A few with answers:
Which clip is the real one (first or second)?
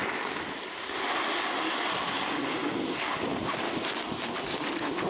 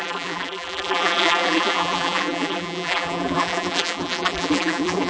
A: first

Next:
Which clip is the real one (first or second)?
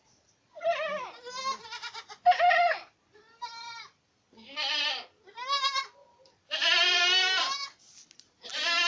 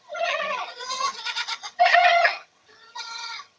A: first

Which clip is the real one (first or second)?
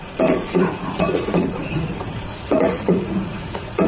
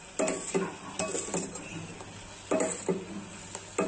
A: second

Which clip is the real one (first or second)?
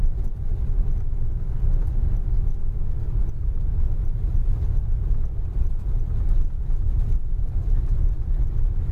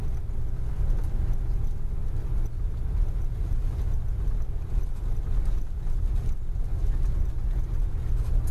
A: second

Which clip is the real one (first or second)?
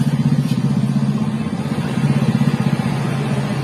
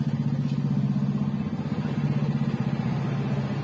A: second